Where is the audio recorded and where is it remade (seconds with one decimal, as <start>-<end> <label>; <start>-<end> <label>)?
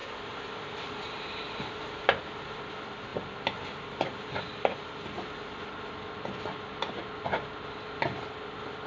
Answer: 0.0-2.7 remade; 2.7-8.9 recorded